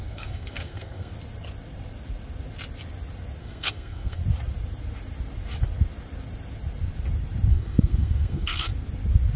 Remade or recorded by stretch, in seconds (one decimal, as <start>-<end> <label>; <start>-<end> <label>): 0.0-1.1 remade; 1.1-3.4 recorded; 3.4-4.2 remade; 4.2-7.5 recorded; 7.5-8.7 remade; 8.7-9.4 recorded